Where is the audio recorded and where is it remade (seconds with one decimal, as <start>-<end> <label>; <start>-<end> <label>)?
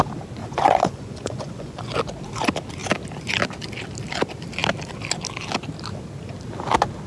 0.0-0.4 recorded; 0.4-1.8 remade; 1.8-7.1 recorded